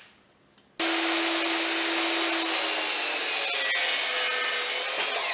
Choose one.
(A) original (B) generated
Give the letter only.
A